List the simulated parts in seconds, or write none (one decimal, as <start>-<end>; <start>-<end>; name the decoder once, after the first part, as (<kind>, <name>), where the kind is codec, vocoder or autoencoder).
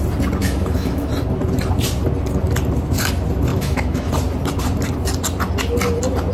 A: 0.4-1.1 (autoencoder, DAC-VAE); 3.5-4.1